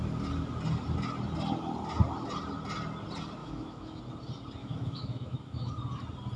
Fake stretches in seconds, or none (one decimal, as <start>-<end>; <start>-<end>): 3.4-4.0; 4.6-5.7

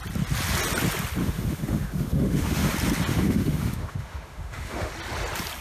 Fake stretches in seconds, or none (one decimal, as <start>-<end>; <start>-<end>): 1.2-2.7; 3.1-4.9

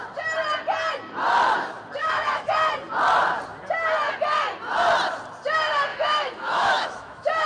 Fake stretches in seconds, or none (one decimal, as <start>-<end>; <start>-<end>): 2.0-2.7; 5.9-7.5